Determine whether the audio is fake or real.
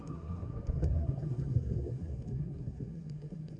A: fake